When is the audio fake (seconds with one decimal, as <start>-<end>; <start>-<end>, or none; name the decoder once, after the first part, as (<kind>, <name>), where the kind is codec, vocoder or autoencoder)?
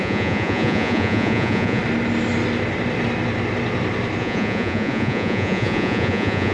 0.0-1.8 (vocoder, Vocos); 4.2-6.5